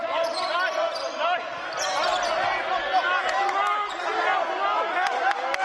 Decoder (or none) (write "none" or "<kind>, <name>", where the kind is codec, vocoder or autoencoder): none